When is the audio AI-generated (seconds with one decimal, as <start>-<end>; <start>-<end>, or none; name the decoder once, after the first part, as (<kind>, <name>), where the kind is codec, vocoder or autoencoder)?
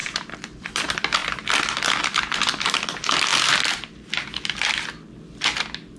0.0-1.2 (vocoder, BigVGAN v2); 2.0-3.3